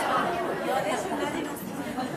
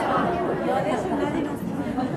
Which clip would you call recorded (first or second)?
second